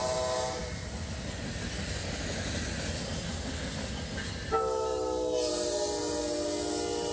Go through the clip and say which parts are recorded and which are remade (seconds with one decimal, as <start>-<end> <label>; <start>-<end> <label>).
0.0-7.1 recorded